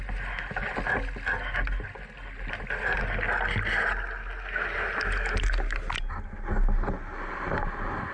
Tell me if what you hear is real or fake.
real